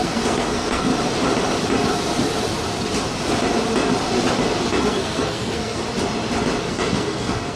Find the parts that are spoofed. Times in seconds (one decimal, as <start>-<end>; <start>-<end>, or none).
0.0-0.9; 4.8-5.8; 6.6-7.6